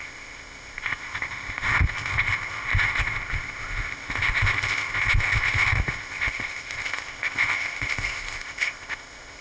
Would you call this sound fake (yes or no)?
yes